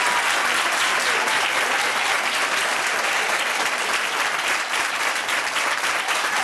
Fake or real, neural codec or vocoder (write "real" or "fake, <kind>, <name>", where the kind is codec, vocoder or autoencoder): fake, vocoder, BigVGAN v2